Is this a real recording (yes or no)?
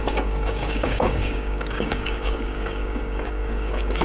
no